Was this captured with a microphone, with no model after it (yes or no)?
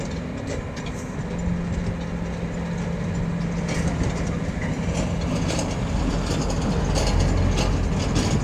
yes